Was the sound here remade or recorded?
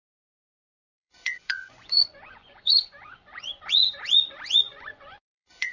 remade